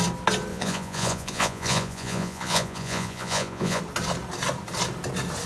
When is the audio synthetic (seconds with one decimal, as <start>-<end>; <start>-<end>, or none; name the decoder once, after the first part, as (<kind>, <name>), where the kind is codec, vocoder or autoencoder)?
0.5-3.8 (vocoder, Vocos)